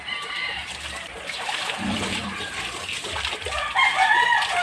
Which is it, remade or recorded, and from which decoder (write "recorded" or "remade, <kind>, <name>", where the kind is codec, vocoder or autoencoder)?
remade, vocoder, BigVGAN v2